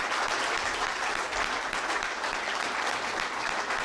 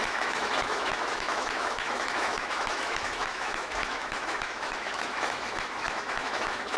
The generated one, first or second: second